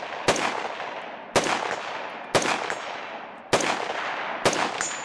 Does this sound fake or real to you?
real